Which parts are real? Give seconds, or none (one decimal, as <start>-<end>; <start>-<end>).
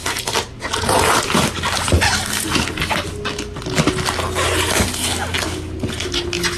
0.0-6.6